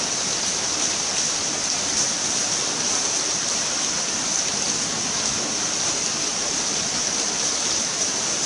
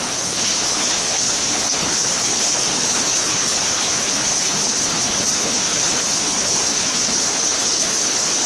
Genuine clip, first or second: first